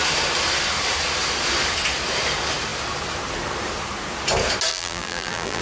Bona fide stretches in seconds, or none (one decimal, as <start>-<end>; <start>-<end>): 0.0-4.7